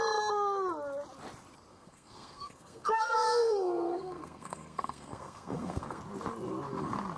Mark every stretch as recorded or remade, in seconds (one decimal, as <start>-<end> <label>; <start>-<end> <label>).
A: 0.0-1.7 recorded; 1.7-6.0 remade; 6.0-7.2 recorded